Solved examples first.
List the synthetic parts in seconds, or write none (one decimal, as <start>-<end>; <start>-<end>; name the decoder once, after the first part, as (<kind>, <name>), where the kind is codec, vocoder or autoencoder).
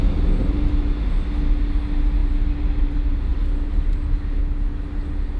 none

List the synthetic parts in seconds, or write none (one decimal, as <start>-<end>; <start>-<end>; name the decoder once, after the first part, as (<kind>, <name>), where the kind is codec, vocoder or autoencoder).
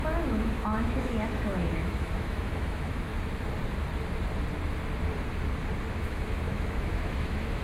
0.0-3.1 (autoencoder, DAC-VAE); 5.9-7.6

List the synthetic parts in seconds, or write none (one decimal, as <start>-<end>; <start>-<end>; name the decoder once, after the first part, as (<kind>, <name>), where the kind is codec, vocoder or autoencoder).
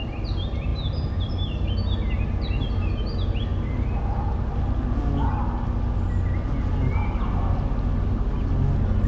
none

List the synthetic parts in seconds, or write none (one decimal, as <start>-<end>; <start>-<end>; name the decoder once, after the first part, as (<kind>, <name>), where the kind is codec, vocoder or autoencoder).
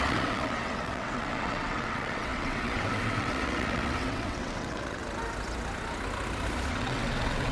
0.0-5.0 (vocoder, WaveNeXt); 6.7-7.5